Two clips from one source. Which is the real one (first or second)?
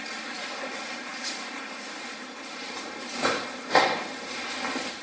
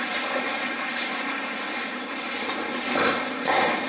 second